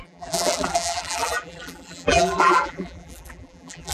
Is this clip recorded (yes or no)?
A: no